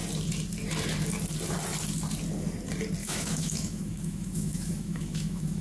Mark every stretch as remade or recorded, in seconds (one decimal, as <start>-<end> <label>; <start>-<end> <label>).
0.0-3.0 recorded; 3.0-5.6 remade